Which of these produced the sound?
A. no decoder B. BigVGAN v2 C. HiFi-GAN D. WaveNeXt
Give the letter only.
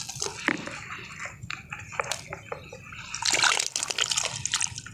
A